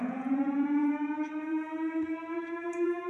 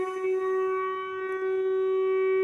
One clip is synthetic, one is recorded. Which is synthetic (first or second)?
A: first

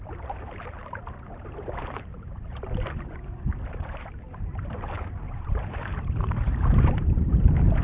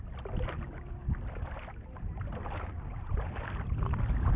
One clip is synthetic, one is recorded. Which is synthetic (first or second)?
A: first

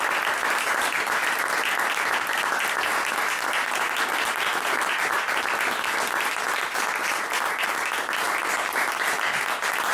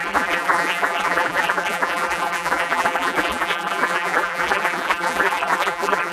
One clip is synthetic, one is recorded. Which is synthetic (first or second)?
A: second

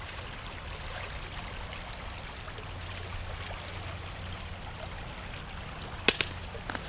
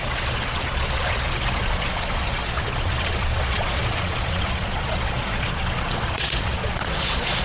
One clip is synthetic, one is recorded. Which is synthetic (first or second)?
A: second